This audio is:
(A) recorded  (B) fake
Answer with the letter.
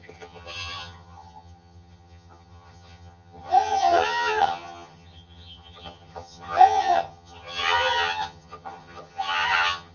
B